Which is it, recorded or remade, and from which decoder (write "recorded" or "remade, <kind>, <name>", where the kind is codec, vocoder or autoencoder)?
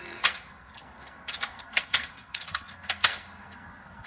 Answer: remade, codec, SNAC